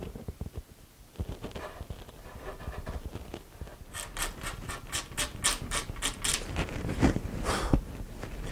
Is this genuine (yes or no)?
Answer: yes